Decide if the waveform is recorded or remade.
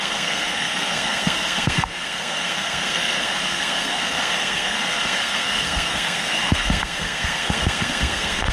remade